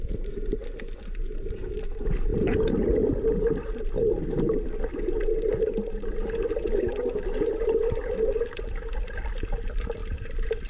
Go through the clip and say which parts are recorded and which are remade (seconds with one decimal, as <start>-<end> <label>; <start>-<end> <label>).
0.0-0.6 remade; 0.6-1.5 recorded; 1.5-10.7 remade